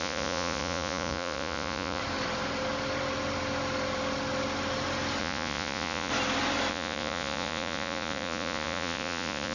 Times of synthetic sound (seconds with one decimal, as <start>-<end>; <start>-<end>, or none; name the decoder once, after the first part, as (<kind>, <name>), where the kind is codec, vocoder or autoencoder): 0.0-2.0 (vocoder, Vocos); 5.2-6.1; 6.7-9.5